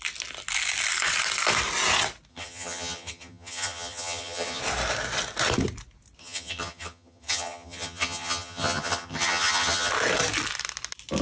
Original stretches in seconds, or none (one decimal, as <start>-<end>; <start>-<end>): 0.0-2.3; 4.6-6.2; 9.9-11.2

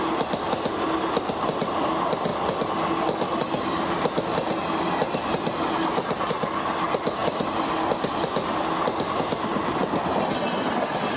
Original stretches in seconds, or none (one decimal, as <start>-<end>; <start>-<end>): 0.0-11.2

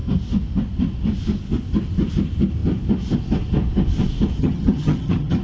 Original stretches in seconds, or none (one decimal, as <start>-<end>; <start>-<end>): 0.0-4.4

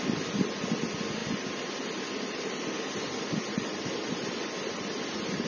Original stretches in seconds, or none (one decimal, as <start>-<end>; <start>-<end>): 0.0-5.5

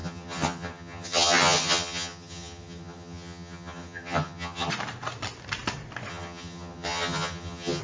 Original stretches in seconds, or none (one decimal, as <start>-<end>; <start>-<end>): 4.7-6.1

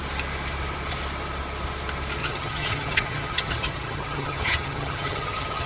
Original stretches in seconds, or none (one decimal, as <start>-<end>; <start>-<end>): 0.0-2.2